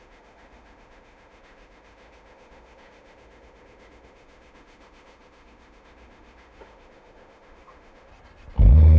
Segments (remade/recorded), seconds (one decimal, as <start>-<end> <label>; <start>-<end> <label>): 0.0-8.1 remade; 8.1-9.0 recorded